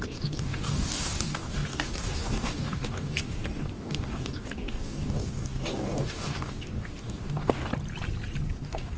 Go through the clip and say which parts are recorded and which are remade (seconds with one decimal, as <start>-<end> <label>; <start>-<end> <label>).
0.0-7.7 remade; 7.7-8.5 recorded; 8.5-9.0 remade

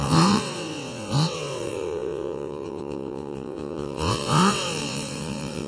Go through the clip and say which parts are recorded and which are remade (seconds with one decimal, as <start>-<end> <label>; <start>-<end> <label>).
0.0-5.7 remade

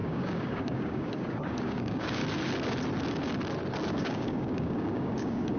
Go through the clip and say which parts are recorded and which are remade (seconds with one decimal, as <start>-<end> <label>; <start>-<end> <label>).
0.0-2.2 remade; 2.2-3.9 recorded; 3.9-5.6 remade

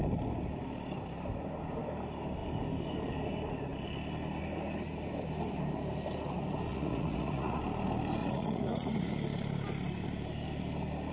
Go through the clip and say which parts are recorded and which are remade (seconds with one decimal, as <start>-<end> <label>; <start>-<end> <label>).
0.0-6.7 recorded; 6.7-7.6 remade; 7.6-8.2 recorded; 8.2-9.1 remade; 9.1-11.1 recorded